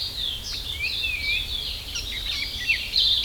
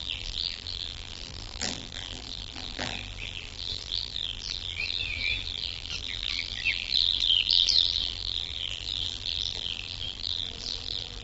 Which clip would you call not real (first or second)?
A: second